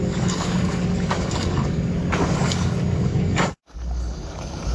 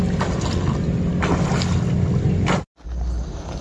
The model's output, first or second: first